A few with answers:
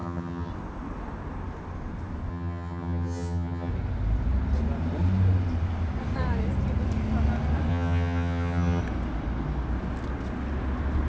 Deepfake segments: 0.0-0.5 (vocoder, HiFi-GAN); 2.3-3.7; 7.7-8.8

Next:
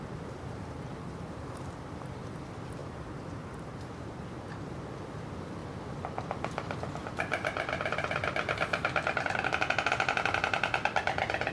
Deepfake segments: 0.0-5.6 (vocoder, BigVGAN v2); 9.9-11.5

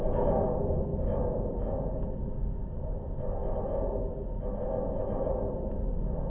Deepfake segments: none